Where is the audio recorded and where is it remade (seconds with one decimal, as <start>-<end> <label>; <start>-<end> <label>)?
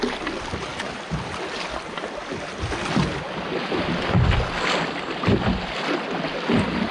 0.0-6.9 recorded